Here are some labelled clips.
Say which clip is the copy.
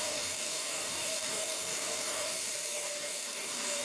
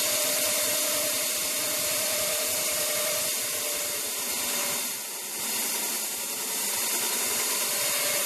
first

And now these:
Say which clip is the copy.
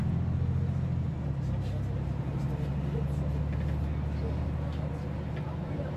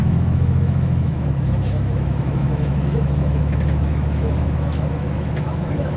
second